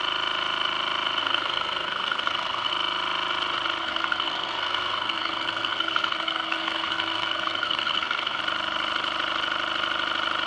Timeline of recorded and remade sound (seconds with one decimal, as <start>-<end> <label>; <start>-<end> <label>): 0.0-1.2 recorded; 1.2-2.7 remade; 2.7-3.8 recorded; 3.8-8.4 remade; 8.4-10.5 recorded